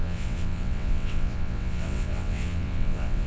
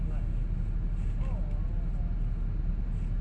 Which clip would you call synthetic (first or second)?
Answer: first